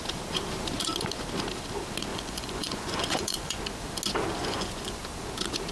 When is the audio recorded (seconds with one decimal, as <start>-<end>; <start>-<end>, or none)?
0.0-2.1; 3.6-4.4; 5.0-5.7